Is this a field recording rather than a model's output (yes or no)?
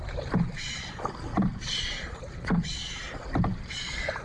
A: no